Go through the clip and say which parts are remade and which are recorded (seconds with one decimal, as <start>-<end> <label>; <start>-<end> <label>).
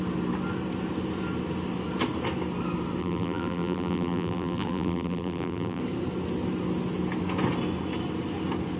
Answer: 0.0-3.0 recorded; 3.0-5.8 remade; 5.8-8.8 recorded